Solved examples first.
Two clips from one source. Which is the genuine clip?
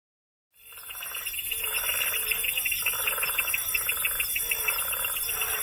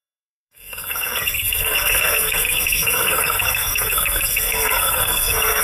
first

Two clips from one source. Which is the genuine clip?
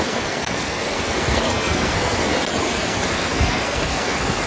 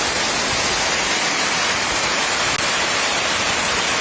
second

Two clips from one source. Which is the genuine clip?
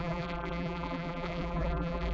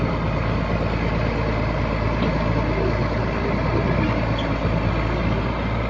second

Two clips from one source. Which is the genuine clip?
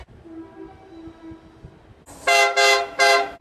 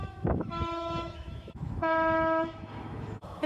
first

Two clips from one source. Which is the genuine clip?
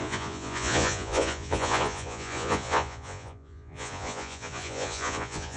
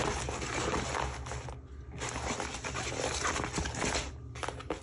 second